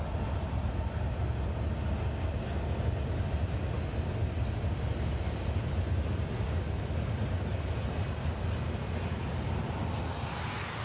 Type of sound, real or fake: real